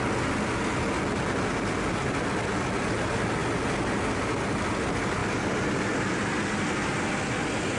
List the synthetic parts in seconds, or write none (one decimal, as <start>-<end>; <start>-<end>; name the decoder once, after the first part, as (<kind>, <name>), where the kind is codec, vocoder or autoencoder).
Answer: 5.2-7.3 (vocoder, BigVGAN v2)